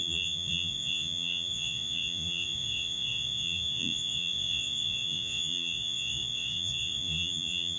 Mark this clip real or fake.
fake